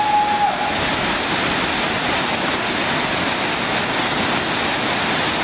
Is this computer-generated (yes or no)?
no